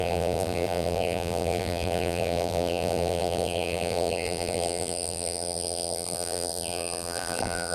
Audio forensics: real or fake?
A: fake